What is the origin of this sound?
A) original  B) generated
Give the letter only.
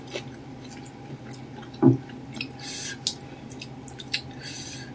A